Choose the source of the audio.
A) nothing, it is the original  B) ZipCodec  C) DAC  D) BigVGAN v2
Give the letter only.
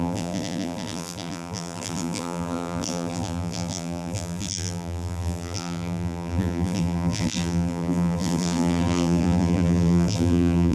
D